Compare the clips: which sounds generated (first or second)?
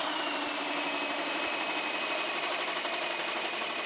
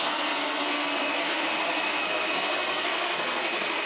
second